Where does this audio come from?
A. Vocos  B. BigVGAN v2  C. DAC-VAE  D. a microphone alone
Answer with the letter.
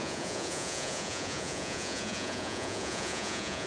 A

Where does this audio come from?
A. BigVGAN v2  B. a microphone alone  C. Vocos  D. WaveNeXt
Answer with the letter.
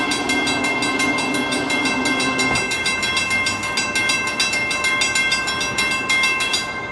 B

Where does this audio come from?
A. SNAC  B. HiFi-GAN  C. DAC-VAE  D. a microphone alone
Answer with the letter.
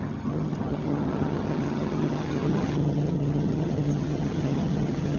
B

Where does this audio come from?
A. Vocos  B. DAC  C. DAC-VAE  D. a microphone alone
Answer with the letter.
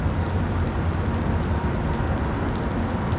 D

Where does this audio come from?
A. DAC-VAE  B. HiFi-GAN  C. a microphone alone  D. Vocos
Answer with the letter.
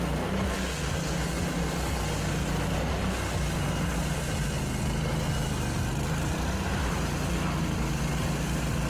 C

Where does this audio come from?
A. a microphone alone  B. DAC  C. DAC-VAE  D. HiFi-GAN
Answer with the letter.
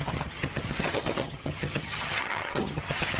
D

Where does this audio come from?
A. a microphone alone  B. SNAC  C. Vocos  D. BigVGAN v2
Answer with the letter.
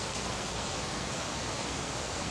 B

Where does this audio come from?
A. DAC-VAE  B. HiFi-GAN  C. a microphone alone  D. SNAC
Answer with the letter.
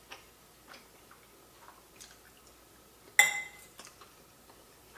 C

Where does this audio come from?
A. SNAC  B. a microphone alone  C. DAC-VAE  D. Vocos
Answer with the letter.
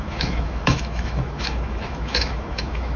C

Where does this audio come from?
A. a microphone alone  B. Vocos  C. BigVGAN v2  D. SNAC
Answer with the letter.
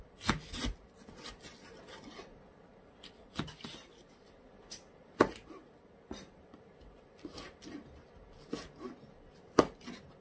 A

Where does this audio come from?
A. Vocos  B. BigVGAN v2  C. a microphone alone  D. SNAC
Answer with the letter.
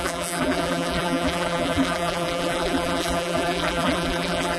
B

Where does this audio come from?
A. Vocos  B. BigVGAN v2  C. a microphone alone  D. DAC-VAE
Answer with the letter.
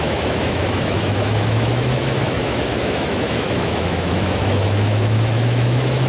D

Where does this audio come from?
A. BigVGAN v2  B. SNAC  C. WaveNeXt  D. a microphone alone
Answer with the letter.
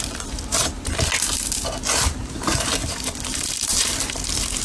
A